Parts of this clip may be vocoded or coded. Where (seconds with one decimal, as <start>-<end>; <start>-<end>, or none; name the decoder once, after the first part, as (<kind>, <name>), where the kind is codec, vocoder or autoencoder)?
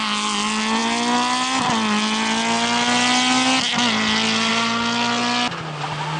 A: none